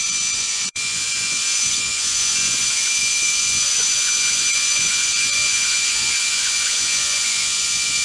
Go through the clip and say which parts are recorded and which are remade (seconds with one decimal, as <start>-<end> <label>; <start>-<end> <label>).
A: 0.0-8.0 remade